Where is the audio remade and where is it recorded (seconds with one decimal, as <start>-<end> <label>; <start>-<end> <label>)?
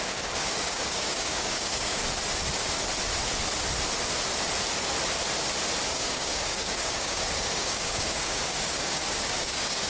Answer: 0.0-2.0 remade; 2.0-5.9 recorded; 5.9-9.9 remade